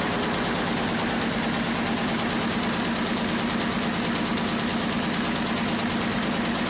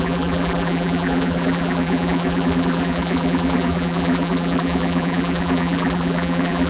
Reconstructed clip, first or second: second